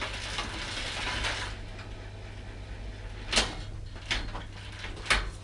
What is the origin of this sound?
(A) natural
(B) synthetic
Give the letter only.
A